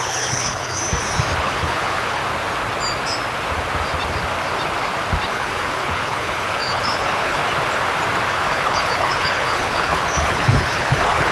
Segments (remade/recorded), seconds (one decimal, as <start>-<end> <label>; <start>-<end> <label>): 0.0-0.8 remade; 0.8-1.4 recorded; 1.4-2.2 remade; 2.2-5.3 recorded; 5.3-7.4 remade; 7.4-8.3 recorded; 8.3-11.3 remade